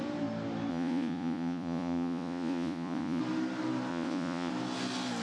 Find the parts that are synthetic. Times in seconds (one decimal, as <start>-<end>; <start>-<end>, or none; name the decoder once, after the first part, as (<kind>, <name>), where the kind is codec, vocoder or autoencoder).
0.7-3.2 (vocoder, Vocos); 3.9-4.5